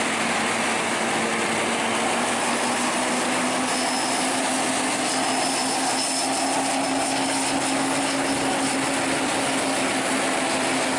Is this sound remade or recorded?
recorded